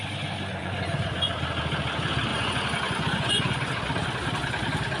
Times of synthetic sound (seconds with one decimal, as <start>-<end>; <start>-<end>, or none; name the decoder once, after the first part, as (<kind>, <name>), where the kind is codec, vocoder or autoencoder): 0.6-1.3 (vocoder, Vocos); 2.3-3.7